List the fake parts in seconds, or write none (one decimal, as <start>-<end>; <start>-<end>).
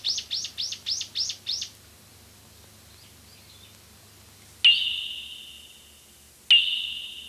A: none